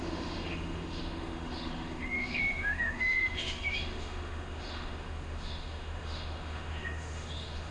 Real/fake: fake